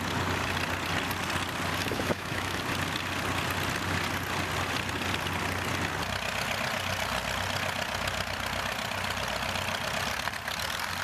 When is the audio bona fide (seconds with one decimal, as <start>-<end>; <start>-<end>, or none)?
0.0-1.8; 2.6-11.0